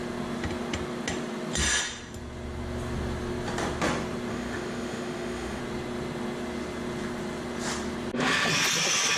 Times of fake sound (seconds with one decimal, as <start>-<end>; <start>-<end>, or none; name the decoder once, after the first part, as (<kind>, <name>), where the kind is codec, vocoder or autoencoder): 4.3-5.6 (autoencoder, DAC-VAE)